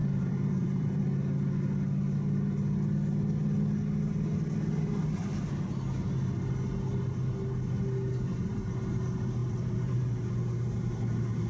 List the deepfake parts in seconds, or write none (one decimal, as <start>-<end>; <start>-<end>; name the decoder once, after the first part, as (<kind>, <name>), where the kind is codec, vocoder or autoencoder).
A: 0.0-1.0 (vocoder, BigVGAN v2); 9.4-10.1